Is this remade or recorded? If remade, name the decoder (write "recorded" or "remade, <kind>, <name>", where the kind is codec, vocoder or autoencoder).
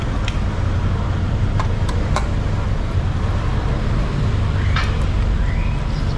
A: recorded